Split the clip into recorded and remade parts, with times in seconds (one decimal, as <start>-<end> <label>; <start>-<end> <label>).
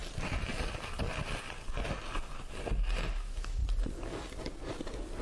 0.0-3.1 recorded; 3.1-3.6 remade; 3.6-5.2 recorded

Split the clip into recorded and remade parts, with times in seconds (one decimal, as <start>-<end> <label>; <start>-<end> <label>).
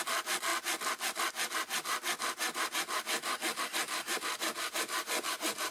0.0-5.7 recorded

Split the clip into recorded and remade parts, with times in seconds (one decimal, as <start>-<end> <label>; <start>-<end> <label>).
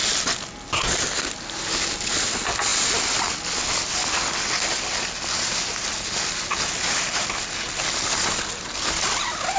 0.0-9.6 recorded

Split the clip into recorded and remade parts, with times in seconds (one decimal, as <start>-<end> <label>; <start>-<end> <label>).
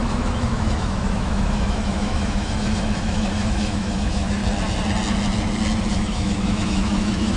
0.0-4.4 remade; 4.4-5.9 recorded; 5.9-7.4 remade